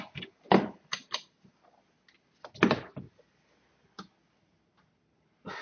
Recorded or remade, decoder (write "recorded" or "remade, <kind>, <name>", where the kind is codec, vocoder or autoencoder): recorded